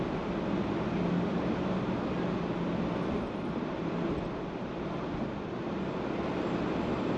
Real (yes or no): yes